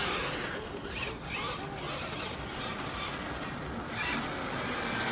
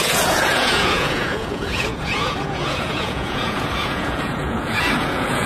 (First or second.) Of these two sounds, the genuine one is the first